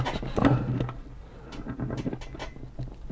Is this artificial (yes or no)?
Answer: no